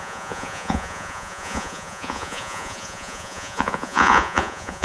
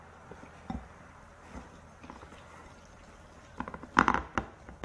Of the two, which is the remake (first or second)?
first